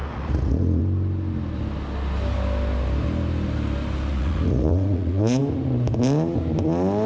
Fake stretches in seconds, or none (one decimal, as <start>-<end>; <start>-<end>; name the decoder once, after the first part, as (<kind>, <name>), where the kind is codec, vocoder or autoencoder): 0.0-0.8 (vocoder, Vocos); 4.1-5.4